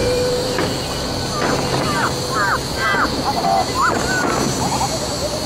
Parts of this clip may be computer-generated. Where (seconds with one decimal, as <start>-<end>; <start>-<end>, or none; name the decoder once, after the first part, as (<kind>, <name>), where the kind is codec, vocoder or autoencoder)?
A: 0.0-0.6 (vocoder, BigVGAN v2)